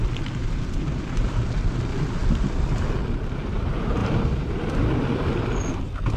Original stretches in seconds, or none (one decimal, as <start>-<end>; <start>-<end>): 0.0-0.4; 1.4-6.2